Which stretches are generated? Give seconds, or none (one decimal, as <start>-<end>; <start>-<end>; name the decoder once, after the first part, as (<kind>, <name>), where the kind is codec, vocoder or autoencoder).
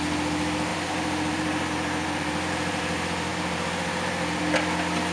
0.7-2.8 (vocoder, BigVGAN v2); 3.3-4.4